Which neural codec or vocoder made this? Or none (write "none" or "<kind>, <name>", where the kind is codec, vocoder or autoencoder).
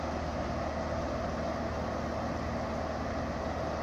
none